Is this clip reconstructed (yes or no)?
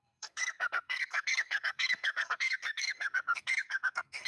yes